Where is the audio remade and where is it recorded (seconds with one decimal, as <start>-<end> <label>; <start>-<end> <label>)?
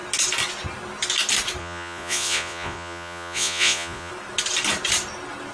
0.0-1.6 recorded; 1.6-4.1 remade; 4.1-5.5 recorded